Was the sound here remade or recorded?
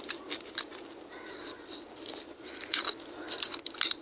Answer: recorded